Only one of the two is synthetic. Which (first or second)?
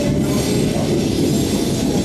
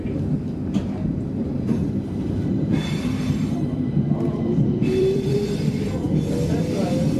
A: second